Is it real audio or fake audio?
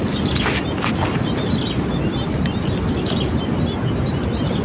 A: real